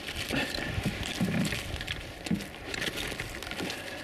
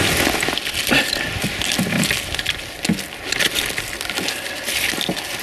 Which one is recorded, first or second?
second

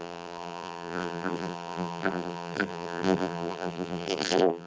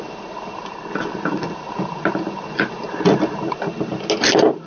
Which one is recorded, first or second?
second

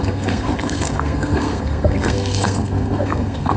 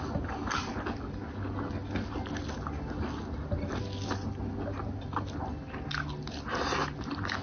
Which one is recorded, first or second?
second